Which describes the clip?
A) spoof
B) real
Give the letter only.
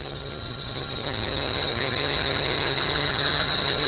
A